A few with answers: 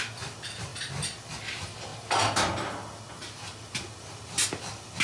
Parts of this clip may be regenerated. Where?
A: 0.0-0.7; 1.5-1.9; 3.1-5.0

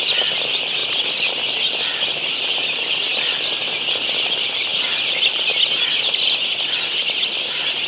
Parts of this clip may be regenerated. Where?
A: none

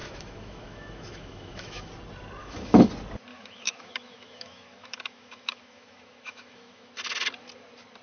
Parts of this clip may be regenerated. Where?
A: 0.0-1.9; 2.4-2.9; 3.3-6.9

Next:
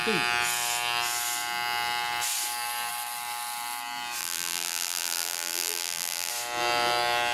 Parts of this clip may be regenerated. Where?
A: 4.2-6.3